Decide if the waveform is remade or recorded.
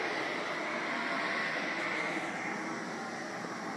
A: remade